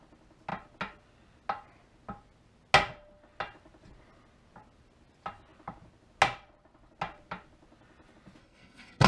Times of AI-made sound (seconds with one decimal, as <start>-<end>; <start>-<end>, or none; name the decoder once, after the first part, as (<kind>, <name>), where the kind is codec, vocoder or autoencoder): 8.4-9.1 (codec, SNAC)